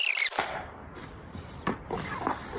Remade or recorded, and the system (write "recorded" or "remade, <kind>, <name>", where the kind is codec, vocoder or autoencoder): remade, vocoder, BigVGAN v2